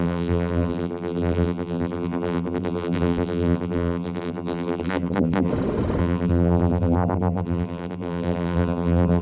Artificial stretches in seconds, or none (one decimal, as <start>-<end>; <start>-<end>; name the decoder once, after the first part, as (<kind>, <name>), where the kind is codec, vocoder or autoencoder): 0.0-5.5 (vocoder, BigVGAN v2); 6.0-9.2